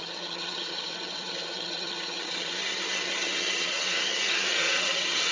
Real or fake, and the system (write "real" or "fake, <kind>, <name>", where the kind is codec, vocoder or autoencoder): fake, vocoder, HiFi-GAN